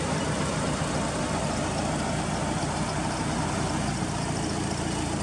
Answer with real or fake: real